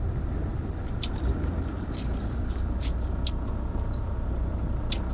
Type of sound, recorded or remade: recorded